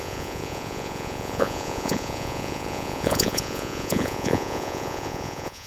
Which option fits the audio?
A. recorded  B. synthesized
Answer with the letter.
B